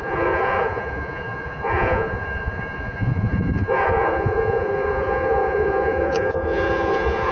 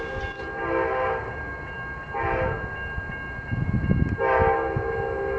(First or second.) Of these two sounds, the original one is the second